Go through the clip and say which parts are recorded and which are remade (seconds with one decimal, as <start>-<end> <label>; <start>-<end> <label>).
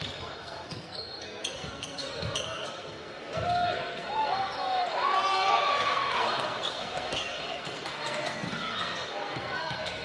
0.0-10.0 remade